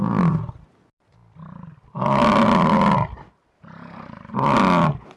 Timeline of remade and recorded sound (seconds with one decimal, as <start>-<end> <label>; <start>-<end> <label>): 0.0-5.2 recorded